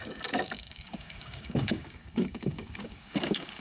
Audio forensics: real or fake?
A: fake